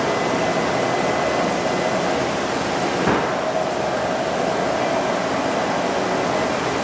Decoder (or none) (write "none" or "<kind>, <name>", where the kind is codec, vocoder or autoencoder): none